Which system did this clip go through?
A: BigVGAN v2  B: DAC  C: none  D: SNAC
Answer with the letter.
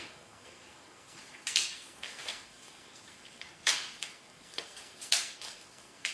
D